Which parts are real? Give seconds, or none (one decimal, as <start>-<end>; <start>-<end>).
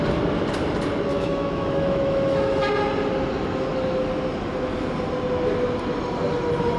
0.0-1.1; 2.7-6.8